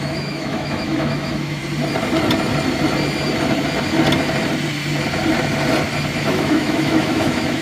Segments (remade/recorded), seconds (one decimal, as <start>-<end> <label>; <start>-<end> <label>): 0.0-1.6 remade; 1.6-6.2 recorded; 6.2-7.6 remade

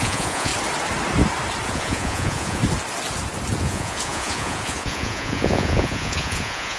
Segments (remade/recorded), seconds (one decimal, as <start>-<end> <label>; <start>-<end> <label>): 0.0-0.5 remade; 0.5-1.7 recorded; 1.7-2.6 remade; 2.6-3.6 recorded; 3.6-6.8 remade